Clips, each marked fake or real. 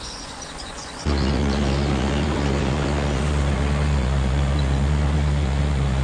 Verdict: fake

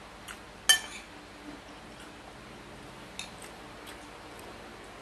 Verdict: real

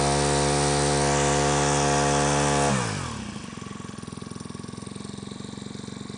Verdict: real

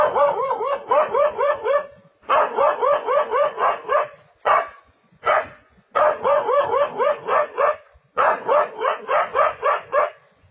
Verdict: fake